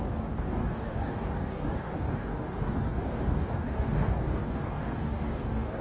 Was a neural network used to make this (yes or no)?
yes